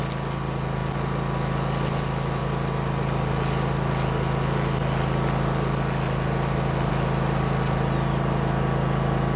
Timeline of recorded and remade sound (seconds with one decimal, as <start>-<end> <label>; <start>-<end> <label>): 0.0-9.4 recorded